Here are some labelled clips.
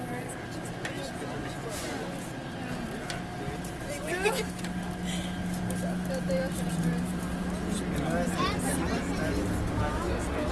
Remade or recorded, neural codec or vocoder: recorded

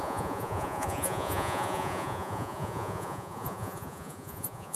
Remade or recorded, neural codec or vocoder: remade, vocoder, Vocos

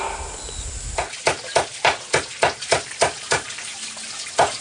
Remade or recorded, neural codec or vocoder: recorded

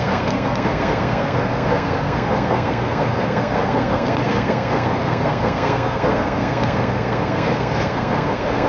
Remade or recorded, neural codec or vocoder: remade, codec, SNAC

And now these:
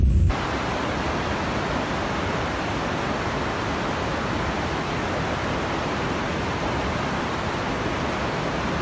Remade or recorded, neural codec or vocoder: recorded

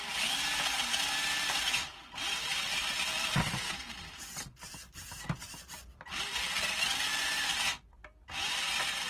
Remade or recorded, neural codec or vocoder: remade, vocoder, BigVGAN v2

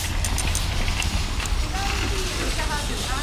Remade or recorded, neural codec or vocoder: recorded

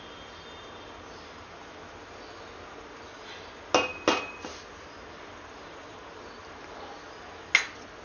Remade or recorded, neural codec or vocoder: recorded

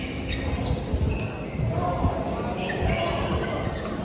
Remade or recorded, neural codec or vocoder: recorded